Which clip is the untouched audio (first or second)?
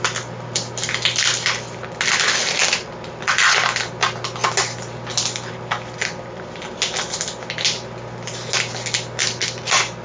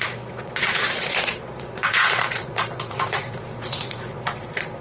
first